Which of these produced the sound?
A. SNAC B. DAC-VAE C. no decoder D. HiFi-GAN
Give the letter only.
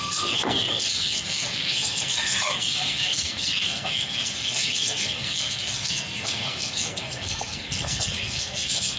A